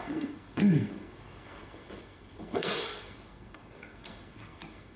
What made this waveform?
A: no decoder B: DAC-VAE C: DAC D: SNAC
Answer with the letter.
D